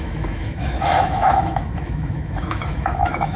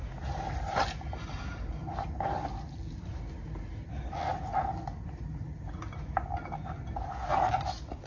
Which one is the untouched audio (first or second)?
second